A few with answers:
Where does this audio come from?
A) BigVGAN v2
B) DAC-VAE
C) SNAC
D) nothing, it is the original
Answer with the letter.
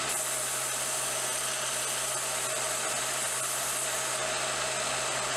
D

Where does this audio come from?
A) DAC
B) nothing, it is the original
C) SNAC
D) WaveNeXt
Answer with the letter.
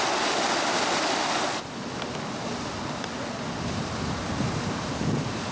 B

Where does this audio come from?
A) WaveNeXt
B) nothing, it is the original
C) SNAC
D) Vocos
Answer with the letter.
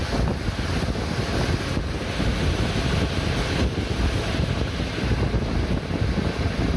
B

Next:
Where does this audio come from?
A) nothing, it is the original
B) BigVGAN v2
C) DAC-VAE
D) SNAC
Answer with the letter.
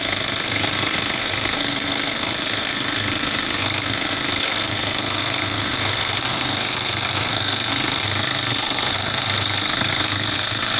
D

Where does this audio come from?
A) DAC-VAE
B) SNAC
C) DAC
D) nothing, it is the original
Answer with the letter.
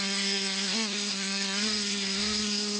B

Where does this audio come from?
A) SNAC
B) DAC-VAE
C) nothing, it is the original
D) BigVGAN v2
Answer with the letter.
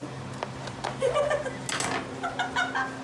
C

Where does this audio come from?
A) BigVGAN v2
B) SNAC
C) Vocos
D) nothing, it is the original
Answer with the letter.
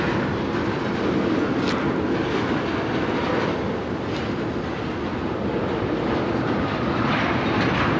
D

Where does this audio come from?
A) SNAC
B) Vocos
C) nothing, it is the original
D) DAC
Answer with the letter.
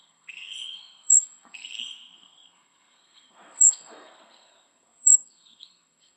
A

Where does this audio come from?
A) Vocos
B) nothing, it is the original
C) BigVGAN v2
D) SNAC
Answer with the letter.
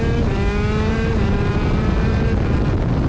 B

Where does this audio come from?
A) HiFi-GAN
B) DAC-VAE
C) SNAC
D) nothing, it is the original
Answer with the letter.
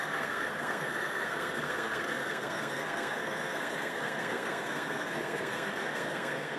C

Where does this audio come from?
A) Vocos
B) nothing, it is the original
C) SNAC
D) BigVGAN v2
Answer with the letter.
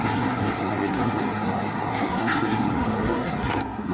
C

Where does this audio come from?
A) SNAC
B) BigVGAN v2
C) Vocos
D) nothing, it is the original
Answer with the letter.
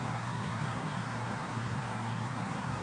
A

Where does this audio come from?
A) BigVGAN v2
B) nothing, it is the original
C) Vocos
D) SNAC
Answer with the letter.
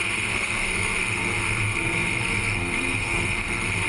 D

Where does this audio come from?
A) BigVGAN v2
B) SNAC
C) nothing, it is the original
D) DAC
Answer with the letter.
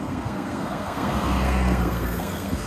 B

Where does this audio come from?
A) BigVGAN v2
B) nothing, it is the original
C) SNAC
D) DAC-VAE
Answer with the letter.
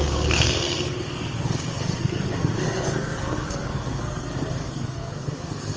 C